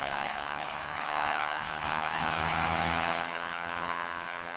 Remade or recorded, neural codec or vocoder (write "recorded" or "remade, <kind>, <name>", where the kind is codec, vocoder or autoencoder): remade, codec, HILCodec